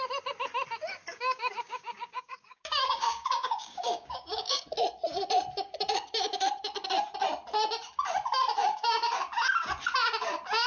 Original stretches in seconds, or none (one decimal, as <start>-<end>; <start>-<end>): 0.0-1.1; 4.6-8.6; 9.2-10.7